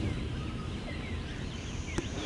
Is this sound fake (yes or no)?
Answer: yes